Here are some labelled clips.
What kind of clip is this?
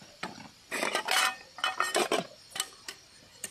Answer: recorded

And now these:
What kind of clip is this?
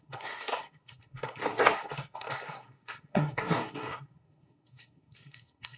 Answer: remade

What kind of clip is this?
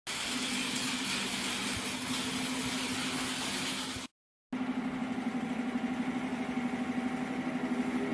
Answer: recorded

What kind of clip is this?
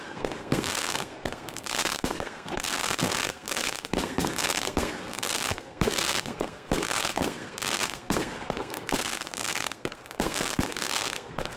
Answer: remade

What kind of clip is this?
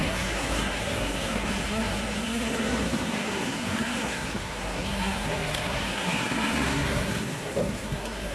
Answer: remade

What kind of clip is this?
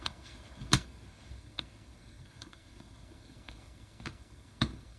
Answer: remade